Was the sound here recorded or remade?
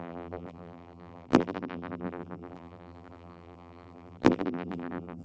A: remade